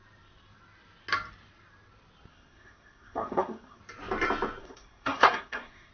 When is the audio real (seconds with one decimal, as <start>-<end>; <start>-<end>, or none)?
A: 0.0-2.3; 3.8-4.6

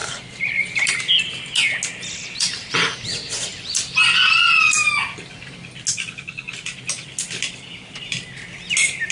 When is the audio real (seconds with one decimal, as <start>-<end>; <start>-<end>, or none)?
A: 1.0-9.1

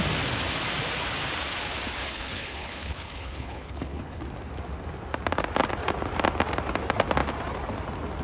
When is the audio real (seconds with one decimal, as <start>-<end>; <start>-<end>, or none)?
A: 0.0-2.0; 4.2-8.2

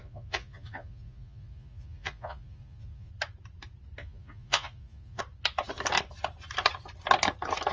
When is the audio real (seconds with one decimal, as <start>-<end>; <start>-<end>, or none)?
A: 3.1-4.0; 5.2-7.7

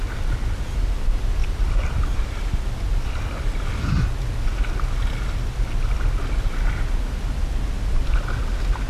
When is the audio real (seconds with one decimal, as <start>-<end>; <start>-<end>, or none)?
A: 0.0-1.4; 2.4-8.9

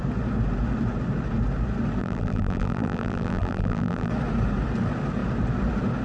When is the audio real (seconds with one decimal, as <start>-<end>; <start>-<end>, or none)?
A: 0.0-2.0; 4.1-6.0

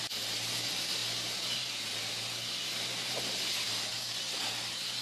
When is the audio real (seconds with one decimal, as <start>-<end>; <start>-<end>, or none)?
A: 0.0-5.0

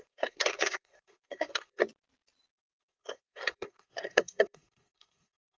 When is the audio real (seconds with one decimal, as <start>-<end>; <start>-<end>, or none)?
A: 1.8-2.5